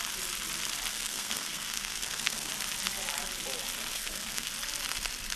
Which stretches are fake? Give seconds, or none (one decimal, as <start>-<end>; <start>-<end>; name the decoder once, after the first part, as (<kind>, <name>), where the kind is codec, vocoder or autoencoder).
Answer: 0.9-2.5 (codec, SNAC); 3.9-4.5